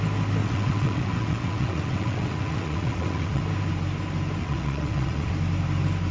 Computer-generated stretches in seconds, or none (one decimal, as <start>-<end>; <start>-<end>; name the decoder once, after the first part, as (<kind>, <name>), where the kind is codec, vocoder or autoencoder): 0.4-3.4 (vocoder, WaveNeXt); 4.4-5.3